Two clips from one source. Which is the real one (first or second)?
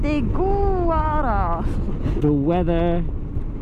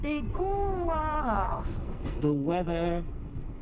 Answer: first